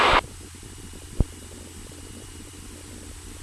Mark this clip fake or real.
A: real